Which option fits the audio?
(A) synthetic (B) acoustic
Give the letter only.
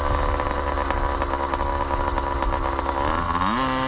B